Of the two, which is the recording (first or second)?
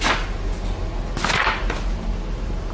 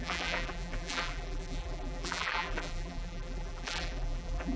first